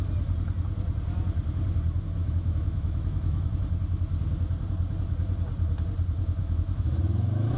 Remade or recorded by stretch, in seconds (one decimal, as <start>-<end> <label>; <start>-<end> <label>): 0.0-2.2 recorded; 2.2-3.5 remade; 3.5-6.4 recorded; 6.4-7.6 remade